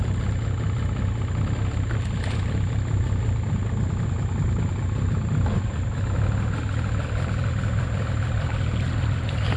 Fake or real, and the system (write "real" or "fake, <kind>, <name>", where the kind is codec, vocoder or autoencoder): real